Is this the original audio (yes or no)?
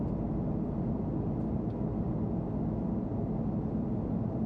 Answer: yes